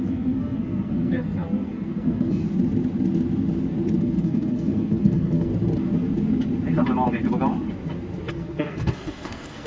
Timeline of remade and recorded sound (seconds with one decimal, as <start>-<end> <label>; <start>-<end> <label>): 0.0-2.4 remade; 2.4-4.0 recorded; 4.0-5.5 remade; 5.5-8.3 recorded; 8.3-9.7 remade